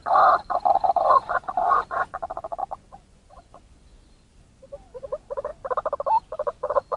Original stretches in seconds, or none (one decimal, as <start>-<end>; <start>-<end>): 5.5-6.2